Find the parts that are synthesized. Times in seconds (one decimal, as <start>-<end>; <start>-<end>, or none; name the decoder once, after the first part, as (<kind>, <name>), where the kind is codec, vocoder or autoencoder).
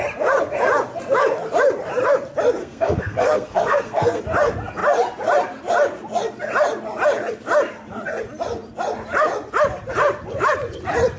2.6-4.2 (codec, SNAC)